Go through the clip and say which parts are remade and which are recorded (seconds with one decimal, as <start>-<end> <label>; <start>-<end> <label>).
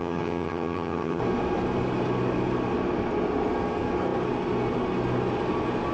0.0-1.2 remade; 1.2-5.9 recorded